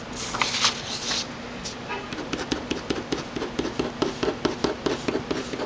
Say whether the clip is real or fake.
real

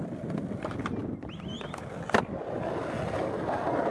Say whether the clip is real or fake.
real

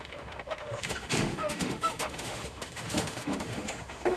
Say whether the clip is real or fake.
fake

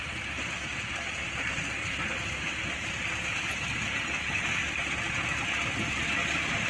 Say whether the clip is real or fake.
real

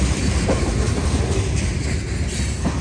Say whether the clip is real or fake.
real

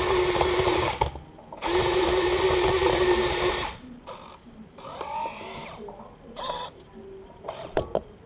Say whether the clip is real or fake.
fake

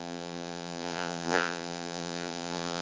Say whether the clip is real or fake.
fake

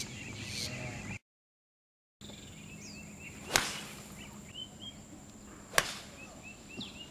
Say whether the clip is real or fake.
real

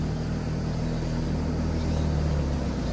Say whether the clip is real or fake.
real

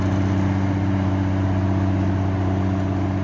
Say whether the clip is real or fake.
real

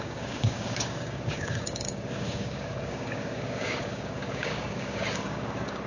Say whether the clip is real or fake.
fake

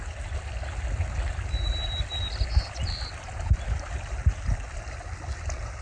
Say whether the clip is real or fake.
real